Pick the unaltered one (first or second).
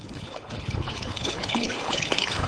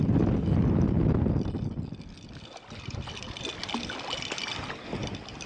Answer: second